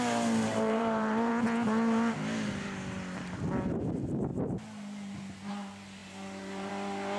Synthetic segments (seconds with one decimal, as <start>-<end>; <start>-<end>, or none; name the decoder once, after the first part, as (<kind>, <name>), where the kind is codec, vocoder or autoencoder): 0.5-1.3 (vocoder, BigVGAN v2); 6.0-6.7

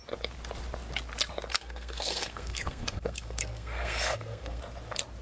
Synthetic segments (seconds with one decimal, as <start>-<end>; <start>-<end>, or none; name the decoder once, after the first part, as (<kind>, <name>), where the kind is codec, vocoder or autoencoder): 1.5-4.6 (codec, SNAC)

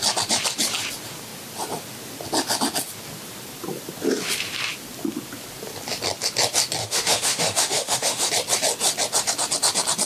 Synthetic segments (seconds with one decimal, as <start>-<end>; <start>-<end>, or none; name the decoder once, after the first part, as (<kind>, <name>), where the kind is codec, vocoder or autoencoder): 6.8-8.3 (autoencoder, DAC-VAE)